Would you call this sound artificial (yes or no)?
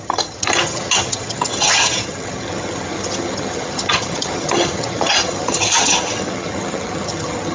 yes